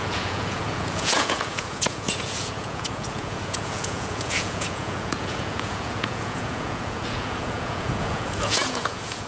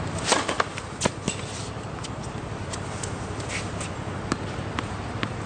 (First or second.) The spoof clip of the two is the first